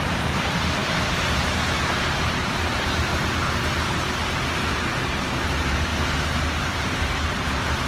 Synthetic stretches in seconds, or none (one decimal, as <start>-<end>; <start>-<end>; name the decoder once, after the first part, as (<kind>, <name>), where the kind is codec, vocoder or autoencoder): 0.0-3.1 (vocoder, BigVGAN v2); 5.0-5.9; 6.4-7.9

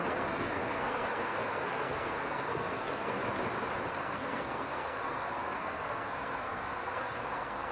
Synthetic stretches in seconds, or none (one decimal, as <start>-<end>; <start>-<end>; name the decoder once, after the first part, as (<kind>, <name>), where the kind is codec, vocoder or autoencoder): 0.0-3.2 (codec, SNAC); 3.9-7.7

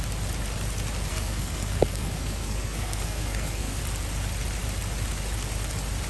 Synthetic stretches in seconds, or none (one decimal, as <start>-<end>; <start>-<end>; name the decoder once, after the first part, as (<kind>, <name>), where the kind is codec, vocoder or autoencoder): 1.1-3.8 (codec, SNAC)

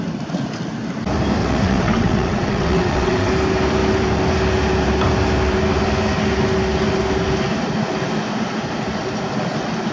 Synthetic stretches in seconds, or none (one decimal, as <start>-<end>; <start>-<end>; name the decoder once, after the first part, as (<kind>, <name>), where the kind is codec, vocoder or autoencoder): 1.4-3.3 (vocoder, WaveNeXt)

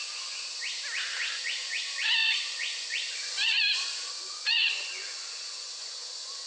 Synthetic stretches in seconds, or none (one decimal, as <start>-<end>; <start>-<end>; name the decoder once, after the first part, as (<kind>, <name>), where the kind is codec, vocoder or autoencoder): 0.0-0.6 (vocoder, Vocos); 1.2-6.5